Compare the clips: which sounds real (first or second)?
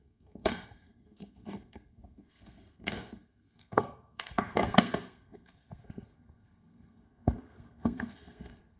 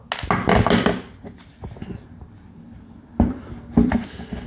second